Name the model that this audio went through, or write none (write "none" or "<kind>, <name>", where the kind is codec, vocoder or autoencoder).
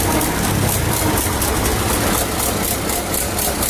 none